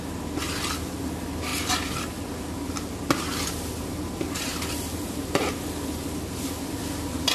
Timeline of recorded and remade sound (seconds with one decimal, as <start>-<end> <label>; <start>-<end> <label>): 0.0-4.5 recorded; 4.5-5.9 remade; 5.9-7.3 recorded